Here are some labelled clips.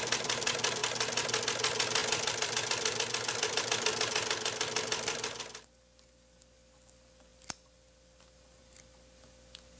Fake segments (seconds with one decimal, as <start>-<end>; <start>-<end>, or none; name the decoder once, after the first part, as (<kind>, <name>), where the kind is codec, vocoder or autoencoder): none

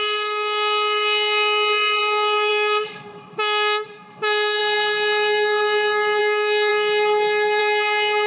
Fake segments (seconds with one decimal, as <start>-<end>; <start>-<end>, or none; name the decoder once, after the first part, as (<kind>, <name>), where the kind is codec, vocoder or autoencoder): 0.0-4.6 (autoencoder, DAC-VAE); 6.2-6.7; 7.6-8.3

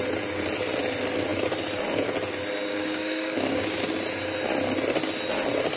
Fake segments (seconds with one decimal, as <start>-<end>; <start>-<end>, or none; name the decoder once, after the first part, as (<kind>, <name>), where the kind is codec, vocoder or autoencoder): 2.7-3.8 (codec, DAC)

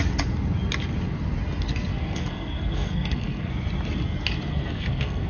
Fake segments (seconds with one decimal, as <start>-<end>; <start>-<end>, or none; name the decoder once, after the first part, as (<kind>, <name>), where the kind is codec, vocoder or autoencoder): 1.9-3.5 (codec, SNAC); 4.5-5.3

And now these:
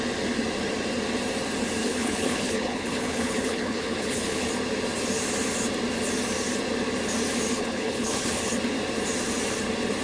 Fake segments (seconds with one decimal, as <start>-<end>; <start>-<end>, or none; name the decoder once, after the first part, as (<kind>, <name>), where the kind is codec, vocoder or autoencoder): 1.8-4.5 (codec, HILCodec); 7.5-8.6

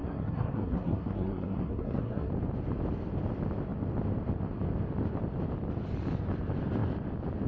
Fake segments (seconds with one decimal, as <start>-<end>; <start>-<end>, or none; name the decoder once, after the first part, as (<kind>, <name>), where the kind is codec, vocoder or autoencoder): 0.0-2.3 (codec, SNAC)